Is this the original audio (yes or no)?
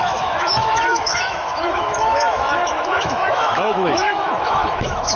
no